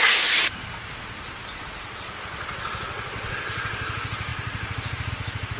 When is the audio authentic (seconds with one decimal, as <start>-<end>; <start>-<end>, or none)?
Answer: none

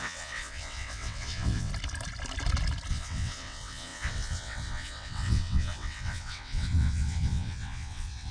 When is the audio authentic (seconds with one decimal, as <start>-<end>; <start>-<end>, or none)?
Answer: 1.7-2.9

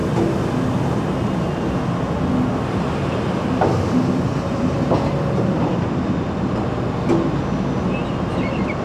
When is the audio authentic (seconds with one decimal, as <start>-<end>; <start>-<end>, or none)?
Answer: 0.0-2.8; 5.7-8.3

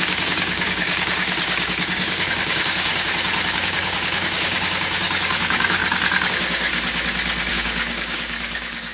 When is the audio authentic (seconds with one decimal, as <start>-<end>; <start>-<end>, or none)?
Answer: 2.9-3.5; 5.8-6.3; 6.7-7.5

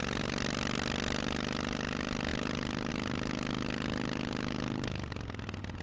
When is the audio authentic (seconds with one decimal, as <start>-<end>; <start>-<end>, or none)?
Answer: 0.0-5.8